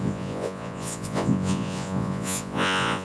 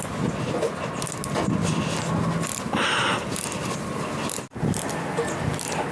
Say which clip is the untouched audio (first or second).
second